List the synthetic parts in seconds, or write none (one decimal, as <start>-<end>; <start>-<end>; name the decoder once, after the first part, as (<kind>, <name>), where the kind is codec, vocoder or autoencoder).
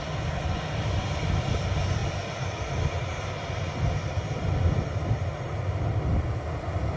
none